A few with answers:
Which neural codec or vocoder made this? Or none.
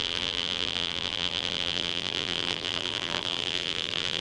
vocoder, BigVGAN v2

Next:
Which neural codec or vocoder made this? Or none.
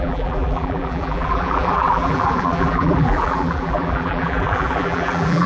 vocoder, BigVGAN v2